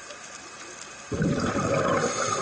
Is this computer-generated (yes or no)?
yes